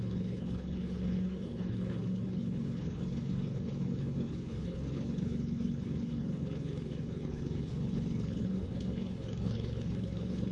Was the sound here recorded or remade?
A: remade